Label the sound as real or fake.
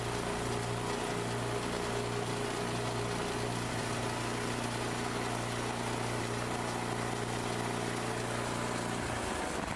real